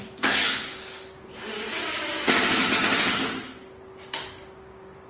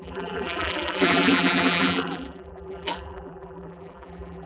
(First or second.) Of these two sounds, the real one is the first